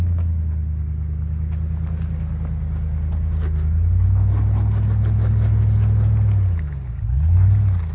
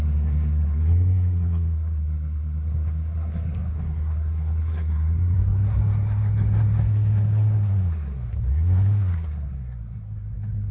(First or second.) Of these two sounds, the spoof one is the second